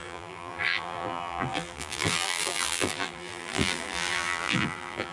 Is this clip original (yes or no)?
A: no